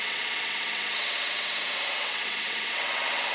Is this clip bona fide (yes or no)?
no